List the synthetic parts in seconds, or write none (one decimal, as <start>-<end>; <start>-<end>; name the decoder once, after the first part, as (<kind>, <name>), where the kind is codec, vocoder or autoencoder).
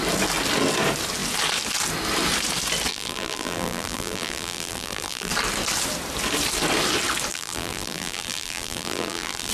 2.9-5.3 (vocoder, BigVGAN v2); 7.3-9.5